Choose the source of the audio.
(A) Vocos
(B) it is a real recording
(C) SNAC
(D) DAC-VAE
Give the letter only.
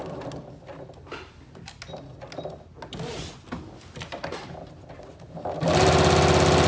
B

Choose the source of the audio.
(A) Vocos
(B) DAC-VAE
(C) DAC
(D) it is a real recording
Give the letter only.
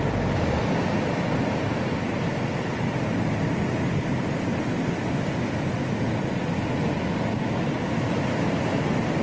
D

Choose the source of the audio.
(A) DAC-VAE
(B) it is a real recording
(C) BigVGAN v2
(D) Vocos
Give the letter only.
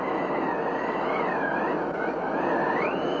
B